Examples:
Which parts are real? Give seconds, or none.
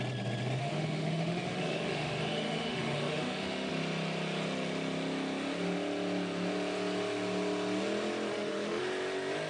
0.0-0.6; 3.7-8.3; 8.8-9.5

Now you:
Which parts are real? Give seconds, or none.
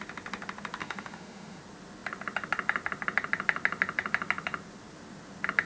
0.0-0.8; 1.6-5.7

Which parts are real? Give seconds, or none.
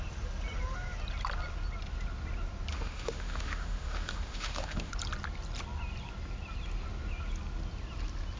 0.0-2.7; 4.9-8.4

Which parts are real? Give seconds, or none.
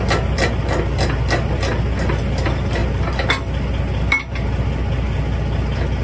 0.0-6.0